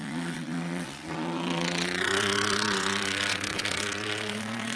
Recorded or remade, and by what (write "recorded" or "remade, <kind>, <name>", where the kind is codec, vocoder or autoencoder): remade, vocoder, WaveNeXt